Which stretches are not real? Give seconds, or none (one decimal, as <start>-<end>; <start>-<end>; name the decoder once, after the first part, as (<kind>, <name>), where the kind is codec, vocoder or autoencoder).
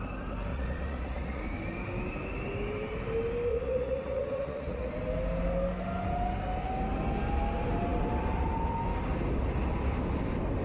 0.5-1.4 (vocoder, Vocos); 3.5-4.9